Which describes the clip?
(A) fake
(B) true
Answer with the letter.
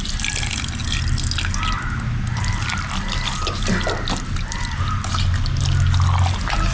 B